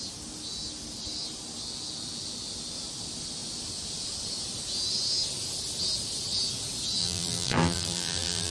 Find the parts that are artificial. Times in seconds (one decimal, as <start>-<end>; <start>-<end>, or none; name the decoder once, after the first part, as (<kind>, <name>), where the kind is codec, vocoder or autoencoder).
7.0-8.5 (vocoder, BigVGAN v2)